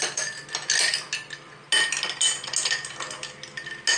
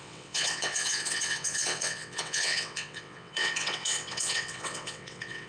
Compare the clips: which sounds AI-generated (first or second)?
second